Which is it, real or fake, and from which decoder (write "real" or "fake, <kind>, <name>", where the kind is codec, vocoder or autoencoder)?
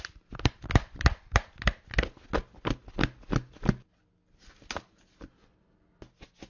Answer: real